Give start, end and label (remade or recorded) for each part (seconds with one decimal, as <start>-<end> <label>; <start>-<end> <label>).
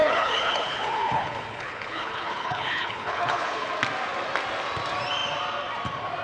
0.0-3.7 remade; 3.7-6.2 recorded